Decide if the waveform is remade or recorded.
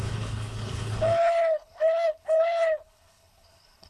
remade